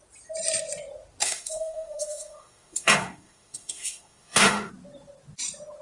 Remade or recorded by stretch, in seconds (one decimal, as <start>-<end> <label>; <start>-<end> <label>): 0.0-1.2 recorded; 1.2-4.7 remade; 4.7-5.8 recorded